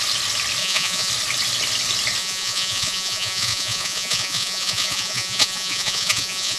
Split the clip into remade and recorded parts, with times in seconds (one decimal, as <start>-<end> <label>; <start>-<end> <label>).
0.0-0.6 recorded; 0.6-1.1 remade; 1.1-2.2 recorded; 2.2-6.6 remade